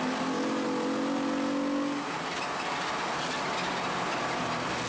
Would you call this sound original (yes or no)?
yes